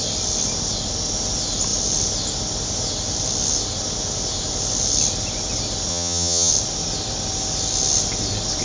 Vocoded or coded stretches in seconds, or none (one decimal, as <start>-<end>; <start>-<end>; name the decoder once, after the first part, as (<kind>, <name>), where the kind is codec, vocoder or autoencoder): 5.9-6.5 (vocoder, HiFi-GAN)